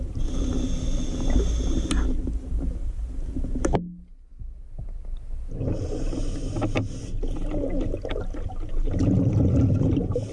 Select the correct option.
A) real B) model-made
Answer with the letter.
A